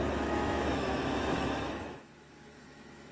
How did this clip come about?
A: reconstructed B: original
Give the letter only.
A